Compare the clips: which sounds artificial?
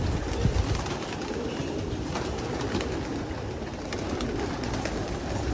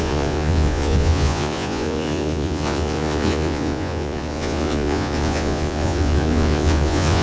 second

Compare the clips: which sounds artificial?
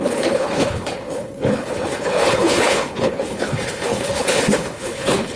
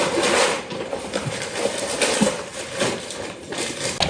first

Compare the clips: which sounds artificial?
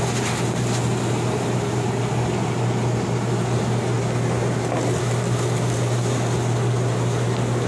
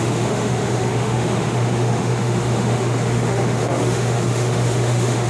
second